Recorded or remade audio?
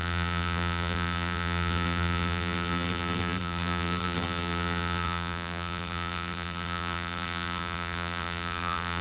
remade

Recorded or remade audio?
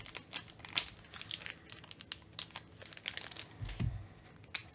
recorded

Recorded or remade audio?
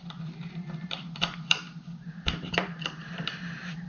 remade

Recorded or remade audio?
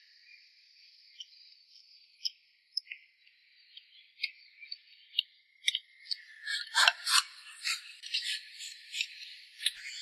recorded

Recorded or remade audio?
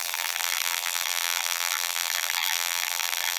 remade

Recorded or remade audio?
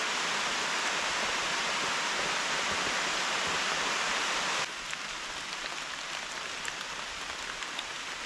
recorded